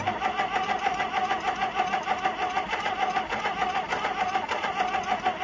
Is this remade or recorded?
recorded